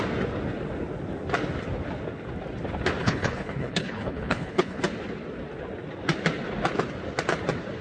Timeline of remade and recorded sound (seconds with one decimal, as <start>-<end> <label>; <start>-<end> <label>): 0.0-3.0 recorded; 3.0-4.8 remade; 4.8-7.8 recorded